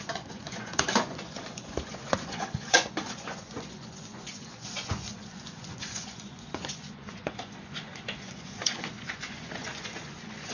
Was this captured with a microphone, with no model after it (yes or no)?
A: no